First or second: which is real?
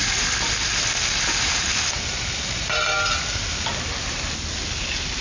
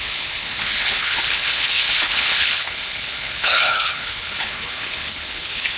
first